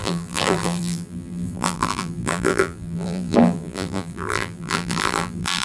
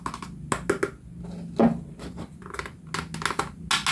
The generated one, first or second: first